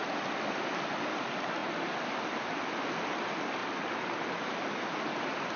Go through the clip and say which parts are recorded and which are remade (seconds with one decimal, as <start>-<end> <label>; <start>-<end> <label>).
0.0-5.6 recorded

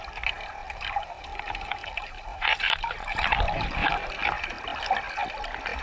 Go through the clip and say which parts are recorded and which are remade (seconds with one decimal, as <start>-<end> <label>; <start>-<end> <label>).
0.0-0.6 recorded; 0.6-4.1 remade; 4.1-5.8 recorded

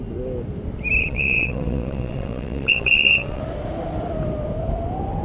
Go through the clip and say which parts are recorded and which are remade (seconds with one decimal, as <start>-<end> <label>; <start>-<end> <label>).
0.0-1.0 recorded; 1.0-3.4 remade; 3.4-5.2 recorded

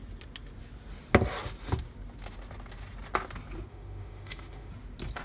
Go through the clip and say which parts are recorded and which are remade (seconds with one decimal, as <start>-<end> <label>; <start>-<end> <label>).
0.0-3.7 recorded; 3.7-4.7 remade; 4.7-5.2 recorded

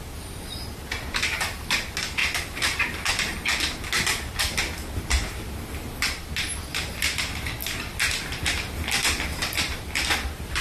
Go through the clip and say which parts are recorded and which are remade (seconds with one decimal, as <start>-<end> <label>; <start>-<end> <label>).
0.0-10.6 recorded

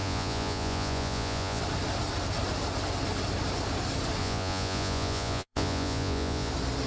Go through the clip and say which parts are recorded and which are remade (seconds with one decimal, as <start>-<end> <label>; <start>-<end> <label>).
0.0-1.6 remade; 1.6-4.2 recorded; 4.2-6.5 remade; 6.5-6.9 recorded